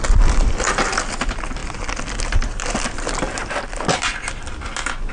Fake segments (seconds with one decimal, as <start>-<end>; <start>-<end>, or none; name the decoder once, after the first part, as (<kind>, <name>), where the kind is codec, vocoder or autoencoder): none